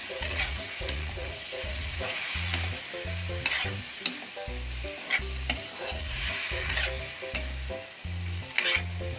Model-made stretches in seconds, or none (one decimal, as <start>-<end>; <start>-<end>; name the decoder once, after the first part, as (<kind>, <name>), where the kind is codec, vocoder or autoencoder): 0.0-2.8 (vocoder, Vocos); 5.8-6.8